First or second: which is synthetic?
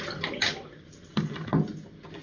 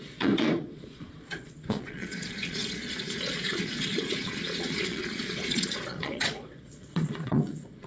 second